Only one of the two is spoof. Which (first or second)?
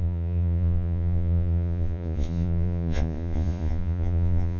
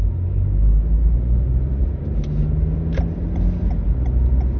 first